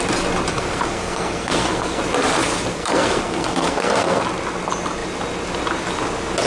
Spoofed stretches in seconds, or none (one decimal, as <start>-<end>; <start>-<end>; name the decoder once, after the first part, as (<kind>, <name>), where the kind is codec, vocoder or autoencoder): 0.5-2.0 (codec, SNAC); 2.7-4.2